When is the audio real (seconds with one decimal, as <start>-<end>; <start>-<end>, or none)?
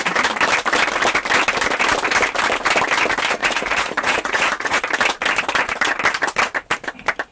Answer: 0.0-3.4; 4.8-7.3